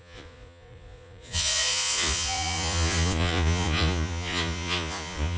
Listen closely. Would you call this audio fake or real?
fake